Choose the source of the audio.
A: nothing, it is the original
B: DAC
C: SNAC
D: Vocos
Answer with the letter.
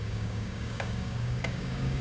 B